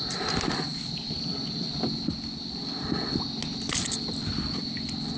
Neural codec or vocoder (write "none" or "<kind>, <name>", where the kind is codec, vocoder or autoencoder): none